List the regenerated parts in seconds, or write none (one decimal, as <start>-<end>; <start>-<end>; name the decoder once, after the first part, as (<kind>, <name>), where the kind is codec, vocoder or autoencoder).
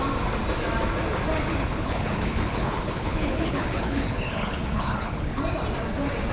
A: 1.6-5.4 (codec, HILCodec)